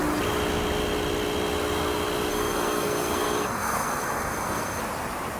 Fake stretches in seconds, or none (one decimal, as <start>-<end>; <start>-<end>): 2.3-4.8